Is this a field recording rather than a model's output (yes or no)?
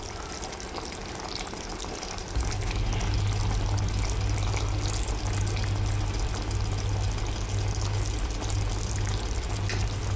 yes